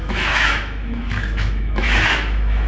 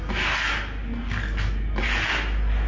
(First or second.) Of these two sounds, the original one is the second